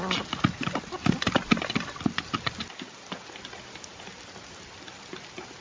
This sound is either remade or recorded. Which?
recorded